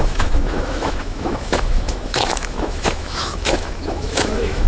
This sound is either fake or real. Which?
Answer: fake